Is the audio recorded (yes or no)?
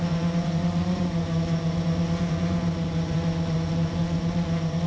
no